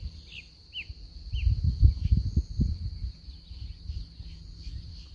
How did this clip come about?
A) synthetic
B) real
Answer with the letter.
B